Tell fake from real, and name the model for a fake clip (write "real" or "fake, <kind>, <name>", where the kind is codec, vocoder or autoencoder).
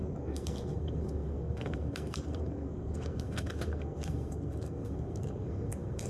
fake, codec, SNAC